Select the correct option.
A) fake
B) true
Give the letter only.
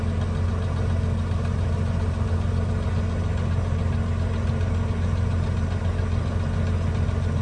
B